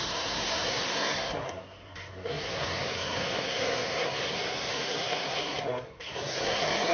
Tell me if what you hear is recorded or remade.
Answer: remade